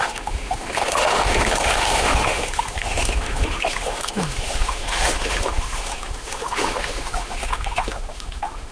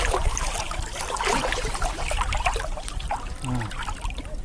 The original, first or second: second